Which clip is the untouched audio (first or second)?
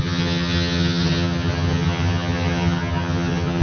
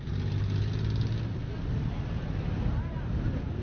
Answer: second